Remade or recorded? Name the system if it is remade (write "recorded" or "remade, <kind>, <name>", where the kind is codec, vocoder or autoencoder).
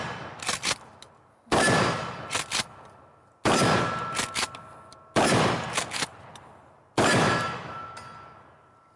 recorded